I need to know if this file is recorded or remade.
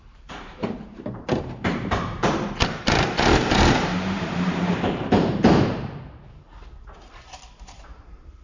remade